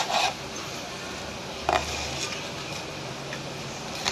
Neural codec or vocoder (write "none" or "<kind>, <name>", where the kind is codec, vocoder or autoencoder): none